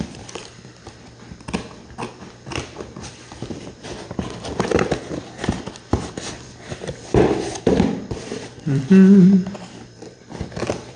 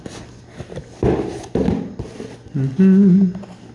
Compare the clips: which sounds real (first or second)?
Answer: second